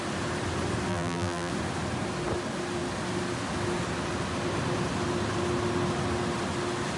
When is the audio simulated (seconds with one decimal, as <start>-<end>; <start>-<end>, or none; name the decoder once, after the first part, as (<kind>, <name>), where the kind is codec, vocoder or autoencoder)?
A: 0.9-1.5 (vocoder, BigVGAN v2)